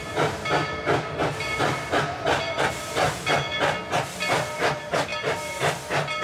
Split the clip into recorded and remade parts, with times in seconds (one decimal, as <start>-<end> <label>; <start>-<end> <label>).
0.0-6.2 recorded